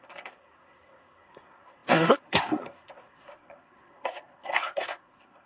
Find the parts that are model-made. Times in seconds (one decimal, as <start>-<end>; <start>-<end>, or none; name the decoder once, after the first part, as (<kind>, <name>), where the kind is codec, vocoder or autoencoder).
0.0-5.5 (codec, SNAC)